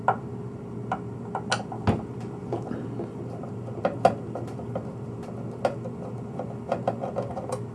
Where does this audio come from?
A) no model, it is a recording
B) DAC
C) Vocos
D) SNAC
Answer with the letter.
A